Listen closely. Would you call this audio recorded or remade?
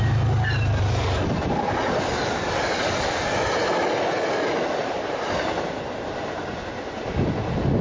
recorded